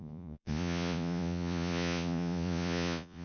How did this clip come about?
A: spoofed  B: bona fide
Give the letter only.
A